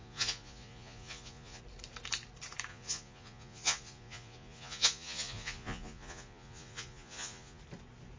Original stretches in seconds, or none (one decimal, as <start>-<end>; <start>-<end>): 1.6-2.7; 7.6-8.2